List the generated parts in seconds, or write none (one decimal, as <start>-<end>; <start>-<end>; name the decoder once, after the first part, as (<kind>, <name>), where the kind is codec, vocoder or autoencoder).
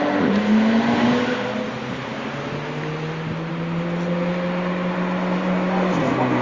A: none